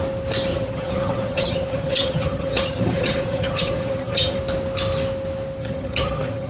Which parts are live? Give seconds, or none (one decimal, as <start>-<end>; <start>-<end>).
0.0-0.5; 4.4-5.6